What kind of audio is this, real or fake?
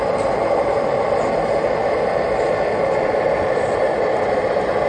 real